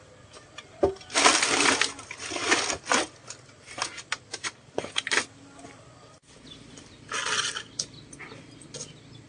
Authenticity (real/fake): real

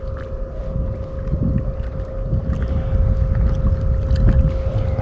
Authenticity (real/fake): real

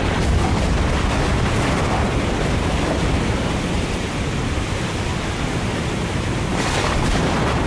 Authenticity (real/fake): fake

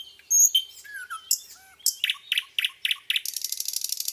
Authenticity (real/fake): real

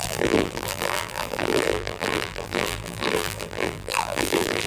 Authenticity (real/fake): fake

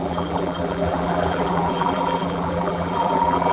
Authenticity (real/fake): fake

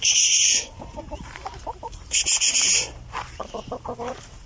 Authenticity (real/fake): fake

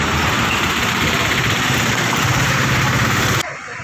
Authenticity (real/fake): fake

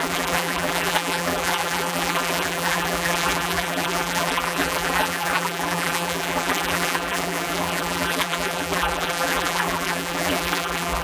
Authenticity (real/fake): fake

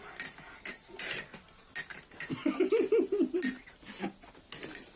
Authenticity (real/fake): real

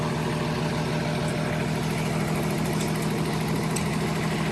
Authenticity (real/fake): real